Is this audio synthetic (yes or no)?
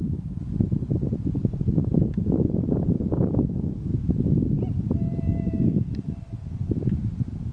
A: no